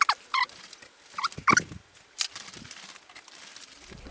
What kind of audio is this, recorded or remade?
recorded